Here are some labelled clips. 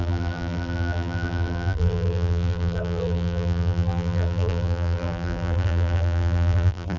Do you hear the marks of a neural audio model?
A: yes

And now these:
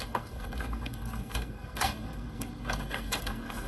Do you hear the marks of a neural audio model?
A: yes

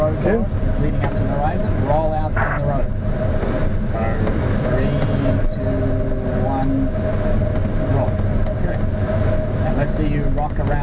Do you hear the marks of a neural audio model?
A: no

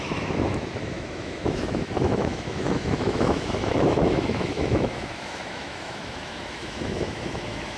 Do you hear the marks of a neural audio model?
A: yes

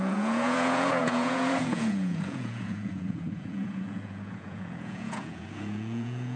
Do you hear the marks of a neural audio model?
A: yes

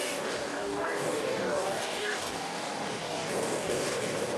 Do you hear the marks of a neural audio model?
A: yes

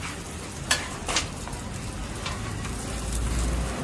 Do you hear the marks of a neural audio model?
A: no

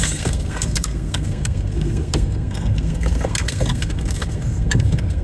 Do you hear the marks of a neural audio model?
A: yes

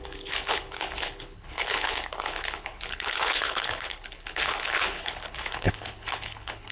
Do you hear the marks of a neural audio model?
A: yes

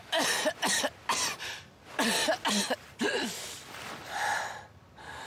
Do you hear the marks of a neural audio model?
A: no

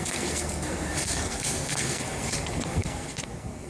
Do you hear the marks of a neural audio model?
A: yes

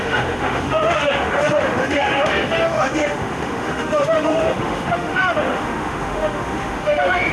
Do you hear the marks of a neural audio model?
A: yes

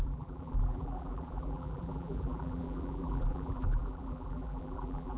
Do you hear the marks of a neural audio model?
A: yes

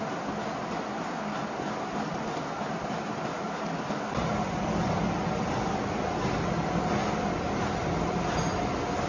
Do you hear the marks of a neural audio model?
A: no